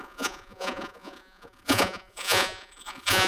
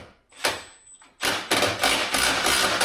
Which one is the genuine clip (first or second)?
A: second